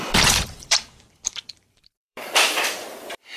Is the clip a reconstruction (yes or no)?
yes